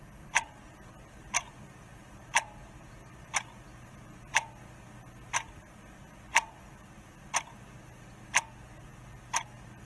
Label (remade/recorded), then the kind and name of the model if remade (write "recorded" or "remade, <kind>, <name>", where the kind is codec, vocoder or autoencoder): recorded